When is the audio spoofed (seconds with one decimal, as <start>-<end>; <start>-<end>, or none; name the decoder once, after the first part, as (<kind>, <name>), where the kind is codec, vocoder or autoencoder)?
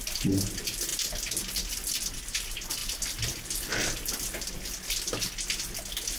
none